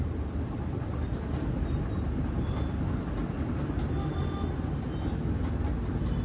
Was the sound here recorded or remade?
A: recorded